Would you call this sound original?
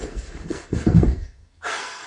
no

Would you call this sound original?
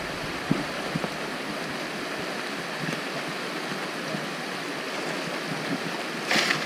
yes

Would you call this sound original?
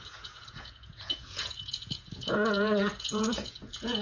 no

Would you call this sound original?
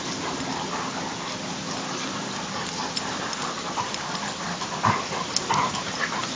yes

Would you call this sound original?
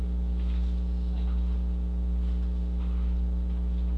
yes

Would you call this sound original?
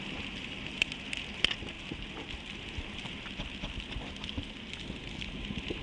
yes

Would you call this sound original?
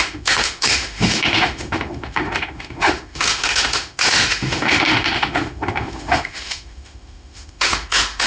no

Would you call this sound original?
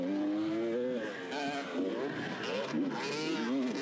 yes